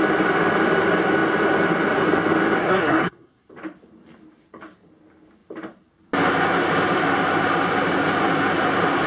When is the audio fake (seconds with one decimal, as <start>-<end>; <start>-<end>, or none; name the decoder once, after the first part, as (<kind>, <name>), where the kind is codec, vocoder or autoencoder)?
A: 2.6-3.5 (codec, SNAC)